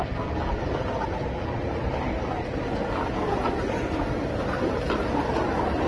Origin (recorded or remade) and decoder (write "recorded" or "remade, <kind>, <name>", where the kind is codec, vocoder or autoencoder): recorded